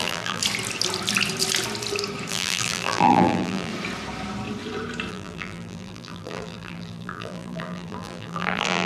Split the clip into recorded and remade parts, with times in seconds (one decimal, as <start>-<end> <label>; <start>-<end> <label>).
0.0-0.4 remade; 0.4-2.3 recorded; 2.3-3.7 remade; 3.7-5.1 recorded; 5.1-8.9 remade